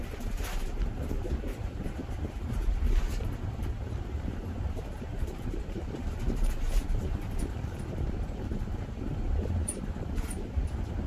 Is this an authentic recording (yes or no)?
no